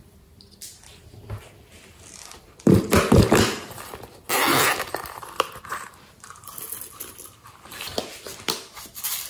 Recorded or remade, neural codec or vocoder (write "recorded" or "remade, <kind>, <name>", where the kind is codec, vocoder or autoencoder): recorded